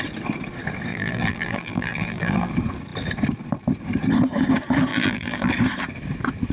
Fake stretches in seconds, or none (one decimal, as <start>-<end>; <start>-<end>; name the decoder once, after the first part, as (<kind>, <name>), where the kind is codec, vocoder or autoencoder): 0.9-2.5 (vocoder, BigVGAN v2); 4.9-5.5